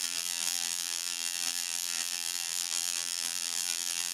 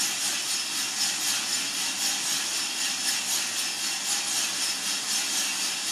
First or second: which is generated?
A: first